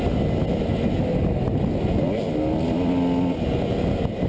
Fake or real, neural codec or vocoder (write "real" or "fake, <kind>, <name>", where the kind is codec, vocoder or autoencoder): real